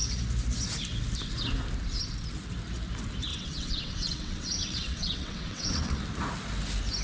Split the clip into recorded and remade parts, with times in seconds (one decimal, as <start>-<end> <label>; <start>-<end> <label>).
0.0-3.3 recorded; 3.3-6.0 remade; 6.0-7.0 recorded